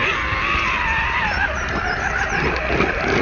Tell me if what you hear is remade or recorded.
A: recorded